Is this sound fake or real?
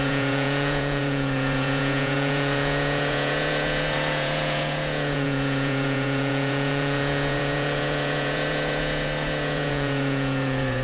fake